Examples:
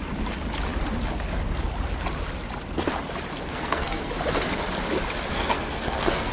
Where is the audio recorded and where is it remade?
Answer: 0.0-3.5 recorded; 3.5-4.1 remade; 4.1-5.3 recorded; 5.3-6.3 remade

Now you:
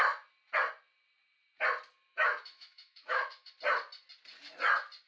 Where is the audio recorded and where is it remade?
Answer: 0.0-2.1 recorded; 2.1-3.5 remade; 3.5-5.1 recorded

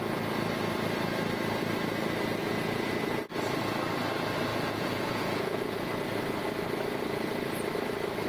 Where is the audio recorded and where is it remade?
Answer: 0.0-2.4 recorded; 2.4-2.9 remade; 2.9-4.5 recorded; 4.5-5.9 remade; 5.9-8.3 recorded

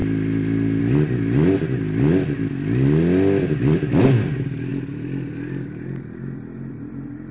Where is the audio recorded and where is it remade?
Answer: 0.0-7.3 recorded

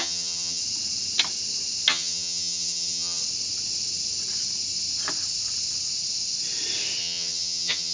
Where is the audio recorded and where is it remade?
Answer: 0.0-0.6 remade; 0.6-1.9 recorded; 1.9-3.2 remade; 3.2-7.0 recorded; 7.0-7.9 remade

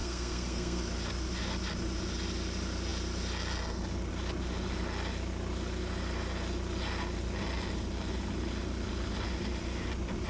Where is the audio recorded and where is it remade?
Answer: 0.0-0.8 remade; 0.8-10.3 recorded

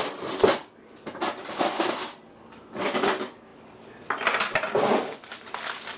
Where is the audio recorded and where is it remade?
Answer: 0.0-6.0 recorded

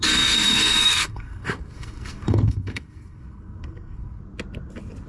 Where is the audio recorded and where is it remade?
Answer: 0.0-4.2 remade; 4.2-5.1 recorded